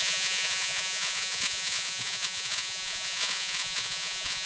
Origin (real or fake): fake